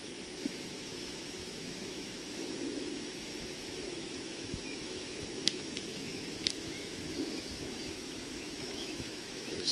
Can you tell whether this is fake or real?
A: fake